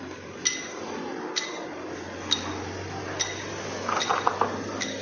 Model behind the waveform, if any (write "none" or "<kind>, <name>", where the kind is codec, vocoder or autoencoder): none